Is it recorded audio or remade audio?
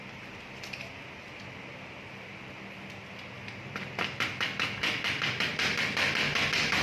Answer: recorded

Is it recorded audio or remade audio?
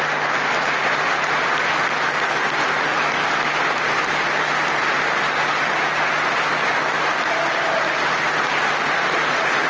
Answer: recorded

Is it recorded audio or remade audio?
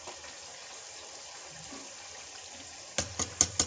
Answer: recorded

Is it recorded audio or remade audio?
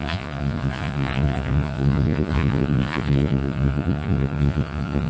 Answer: remade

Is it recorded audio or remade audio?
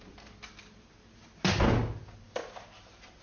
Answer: recorded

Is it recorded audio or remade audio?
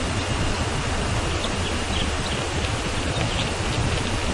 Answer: recorded